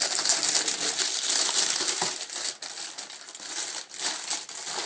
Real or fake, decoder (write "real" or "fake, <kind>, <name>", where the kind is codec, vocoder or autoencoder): real